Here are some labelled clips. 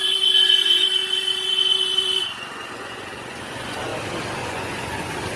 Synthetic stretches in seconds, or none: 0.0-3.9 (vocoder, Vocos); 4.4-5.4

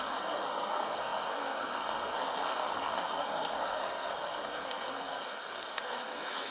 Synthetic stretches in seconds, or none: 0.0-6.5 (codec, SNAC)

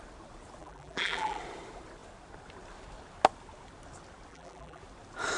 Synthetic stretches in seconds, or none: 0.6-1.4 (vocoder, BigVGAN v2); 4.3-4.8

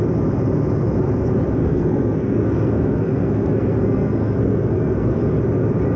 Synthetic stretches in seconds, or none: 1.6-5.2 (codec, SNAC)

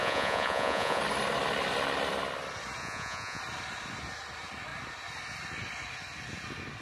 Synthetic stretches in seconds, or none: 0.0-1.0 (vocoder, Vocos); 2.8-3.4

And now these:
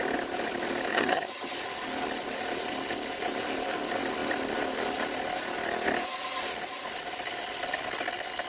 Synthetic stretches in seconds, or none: 0.9-1.5 (vocoder, HiFi-GAN)